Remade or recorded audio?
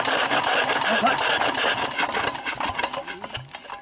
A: recorded